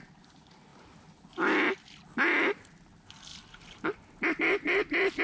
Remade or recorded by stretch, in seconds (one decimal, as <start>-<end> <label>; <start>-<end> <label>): 0.0-5.2 recorded